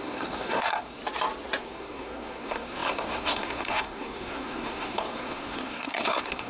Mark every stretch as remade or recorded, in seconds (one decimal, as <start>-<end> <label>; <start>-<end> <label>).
0.0-1.0 remade; 1.0-1.6 recorded; 1.6-6.5 remade